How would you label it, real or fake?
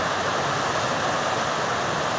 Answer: real